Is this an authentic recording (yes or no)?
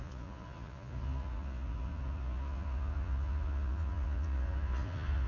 no